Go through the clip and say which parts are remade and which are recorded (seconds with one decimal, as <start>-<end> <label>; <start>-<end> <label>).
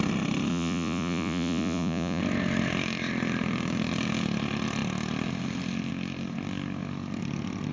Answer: 0.0-0.5 recorded; 0.5-2.2 remade; 2.2-7.7 recorded